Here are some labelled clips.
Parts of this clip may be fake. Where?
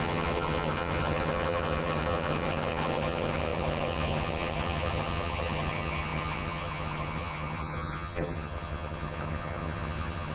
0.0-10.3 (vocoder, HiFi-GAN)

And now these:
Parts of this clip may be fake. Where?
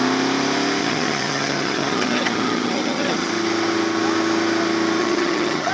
0.8-3.3 (vocoder, HiFi-GAN); 5.0-5.7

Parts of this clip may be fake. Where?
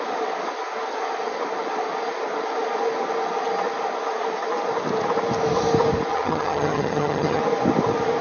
6.1-7.4 (vocoder, HiFi-GAN)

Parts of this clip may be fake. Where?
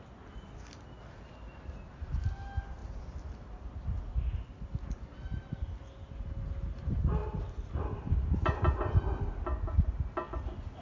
none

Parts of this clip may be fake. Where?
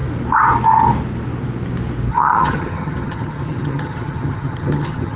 2.1-5.2 (vocoder, HiFi-GAN)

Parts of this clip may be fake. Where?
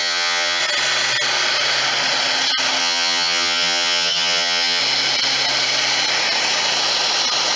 0.0-0.6 (vocoder, HiFi-GAN); 2.8-4.8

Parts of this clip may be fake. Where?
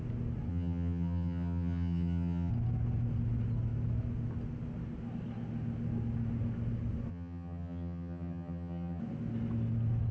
0.5-2.5 (vocoder, HiFi-GAN); 7.1-9.0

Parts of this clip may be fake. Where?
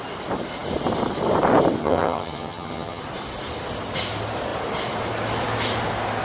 1.8-3.0 (vocoder, HiFi-GAN)